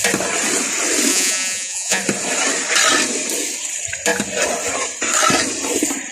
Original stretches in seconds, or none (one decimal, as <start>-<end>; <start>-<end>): 0.0-1.1; 2.0-6.1